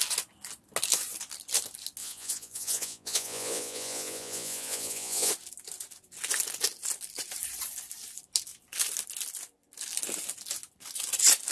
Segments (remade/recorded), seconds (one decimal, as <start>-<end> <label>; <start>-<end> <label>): 0.0-2.0 recorded; 2.0-5.3 remade; 5.3-11.5 recorded